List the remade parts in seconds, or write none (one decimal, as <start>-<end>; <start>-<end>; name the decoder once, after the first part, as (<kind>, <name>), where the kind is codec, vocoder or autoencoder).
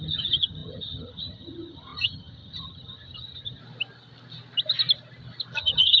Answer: 0.0-3.6 (vocoder, HiFi-GAN); 5.6-6.0